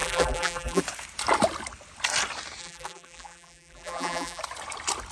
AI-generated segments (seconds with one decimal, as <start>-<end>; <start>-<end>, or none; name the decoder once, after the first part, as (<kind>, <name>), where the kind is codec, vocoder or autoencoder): 0.0-0.8 (vocoder, BigVGAN v2); 2.6-4.4

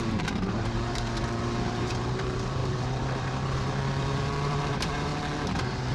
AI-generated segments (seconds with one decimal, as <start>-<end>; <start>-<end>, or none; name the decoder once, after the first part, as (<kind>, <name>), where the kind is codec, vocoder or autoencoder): 0.0-5.9 (vocoder, BigVGAN v2)

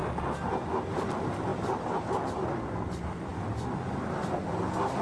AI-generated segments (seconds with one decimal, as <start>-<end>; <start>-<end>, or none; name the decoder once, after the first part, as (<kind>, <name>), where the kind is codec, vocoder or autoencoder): 3.3-4.2 (vocoder, BigVGAN v2)

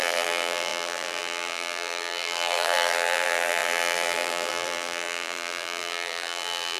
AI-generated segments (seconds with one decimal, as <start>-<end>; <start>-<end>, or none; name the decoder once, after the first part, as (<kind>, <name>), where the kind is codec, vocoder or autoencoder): 0.0-6.8 (vocoder, BigVGAN v2)

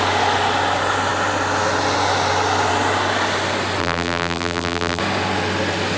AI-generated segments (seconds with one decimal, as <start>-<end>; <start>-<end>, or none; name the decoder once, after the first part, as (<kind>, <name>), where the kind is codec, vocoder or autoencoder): 3.8-5.0 (vocoder, BigVGAN v2)